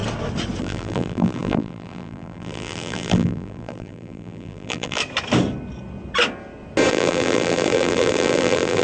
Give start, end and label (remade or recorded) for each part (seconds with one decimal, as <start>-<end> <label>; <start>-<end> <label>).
0.0-0.6 recorded; 0.6-5.0 remade; 5.0-6.9 recorded; 6.9-8.8 remade